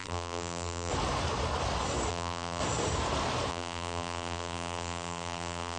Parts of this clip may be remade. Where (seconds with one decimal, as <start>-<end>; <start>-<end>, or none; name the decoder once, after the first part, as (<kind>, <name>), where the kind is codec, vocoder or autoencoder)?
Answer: 0.0-0.9 (vocoder, BigVGAN v2); 2.1-2.6; 3.5-5.8

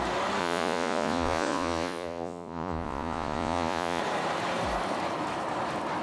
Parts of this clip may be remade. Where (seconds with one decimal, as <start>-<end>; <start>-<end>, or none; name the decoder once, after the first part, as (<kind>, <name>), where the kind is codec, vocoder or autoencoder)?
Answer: 0.4-4.0 (vocoder, Vocos)

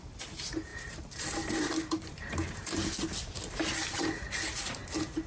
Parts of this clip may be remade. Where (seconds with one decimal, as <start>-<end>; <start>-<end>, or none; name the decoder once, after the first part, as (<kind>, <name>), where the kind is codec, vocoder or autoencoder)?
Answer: 0.0-2.8 (vocoder, BigVGAN v2); 4.0-5.3